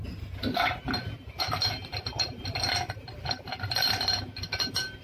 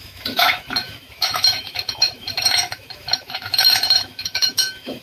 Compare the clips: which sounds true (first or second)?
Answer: first